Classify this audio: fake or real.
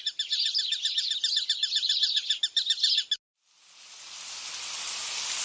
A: real